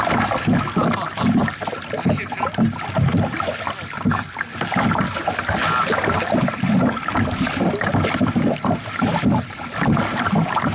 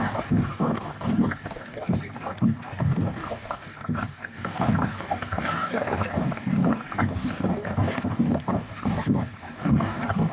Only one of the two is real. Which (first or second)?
first